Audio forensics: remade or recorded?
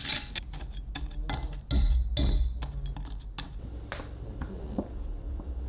recorded